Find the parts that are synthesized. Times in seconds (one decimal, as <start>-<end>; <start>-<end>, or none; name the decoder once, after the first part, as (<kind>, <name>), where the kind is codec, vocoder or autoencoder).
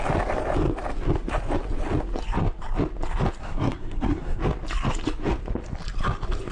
3.4-4.4 (codec, SNAC)